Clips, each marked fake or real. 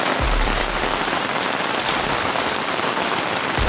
fake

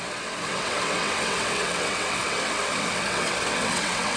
fake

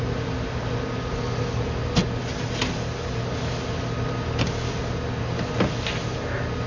real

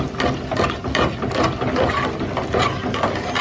real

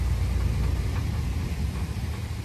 real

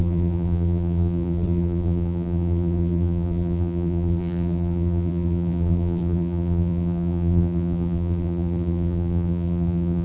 fake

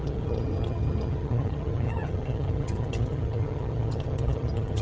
fake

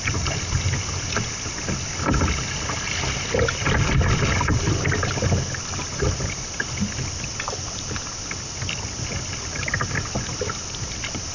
real